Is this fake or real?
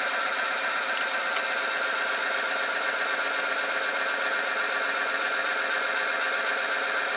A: real